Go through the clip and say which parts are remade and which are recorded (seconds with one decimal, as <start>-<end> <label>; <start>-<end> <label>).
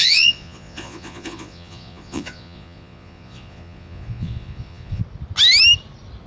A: 0.0-5.0 remade; 5.0-6.3 recorded